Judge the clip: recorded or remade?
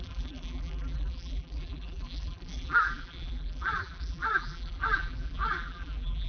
remade